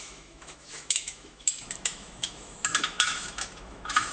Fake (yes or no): yes